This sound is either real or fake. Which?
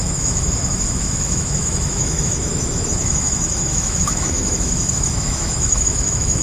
fake